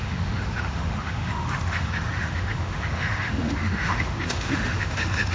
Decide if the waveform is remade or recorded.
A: remade